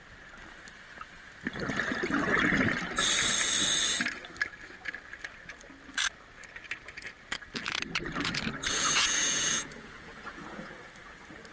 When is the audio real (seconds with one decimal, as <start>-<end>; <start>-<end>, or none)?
0.0-8.7; 10.7-11.5